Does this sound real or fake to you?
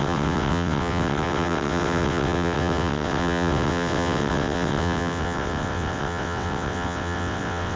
fake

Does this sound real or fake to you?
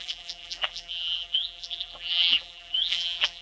fake